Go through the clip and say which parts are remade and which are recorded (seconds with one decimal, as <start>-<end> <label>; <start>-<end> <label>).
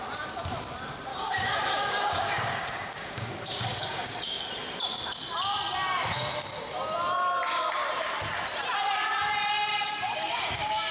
0.0-1.1 recorded; 1.1-4.4 remade; 4.4-9.7 recorded; 9.7-10.9 remade